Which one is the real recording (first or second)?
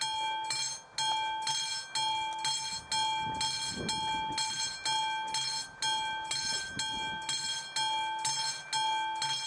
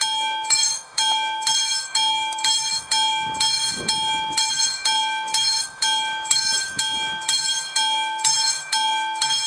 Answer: first